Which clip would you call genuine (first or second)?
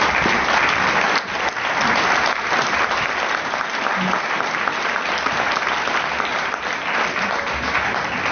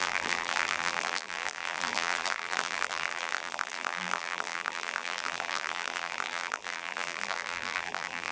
first